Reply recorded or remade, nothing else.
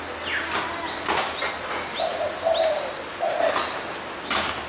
recorded